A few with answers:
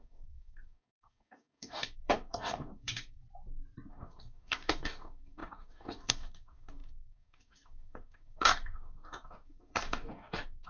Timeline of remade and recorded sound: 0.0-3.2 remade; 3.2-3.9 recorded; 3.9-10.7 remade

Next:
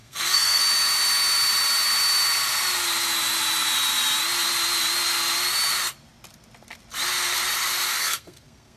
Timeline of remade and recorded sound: 0.0-0.6 remade; 0.6-7.9 recorded; 7.9-8.8 remade

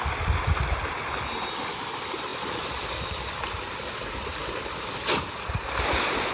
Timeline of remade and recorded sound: 0.0-6.3 recorded